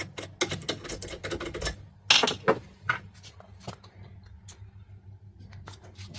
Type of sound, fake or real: real